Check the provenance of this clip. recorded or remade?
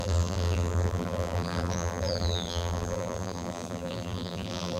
remade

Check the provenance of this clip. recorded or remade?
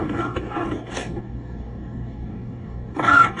remade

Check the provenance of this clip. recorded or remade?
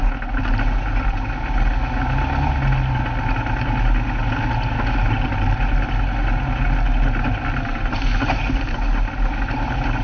recorded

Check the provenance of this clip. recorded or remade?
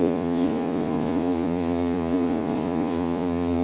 remade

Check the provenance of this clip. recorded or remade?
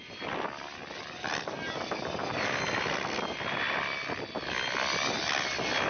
recorded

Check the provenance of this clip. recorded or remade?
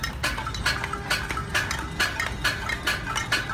recorded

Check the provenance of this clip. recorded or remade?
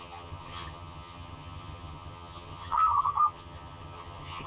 remade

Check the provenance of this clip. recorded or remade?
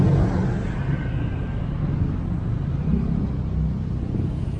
recorded